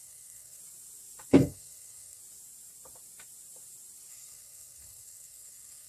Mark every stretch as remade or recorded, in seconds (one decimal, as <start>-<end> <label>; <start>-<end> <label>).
0.0-0.6 remade; 0.6-1.3 recorded; 1.3-2.2 remade; 2.2-4.1 recorded; 4.1-5.9 remade